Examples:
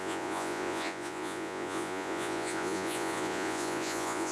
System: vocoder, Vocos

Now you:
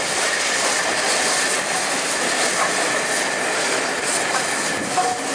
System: none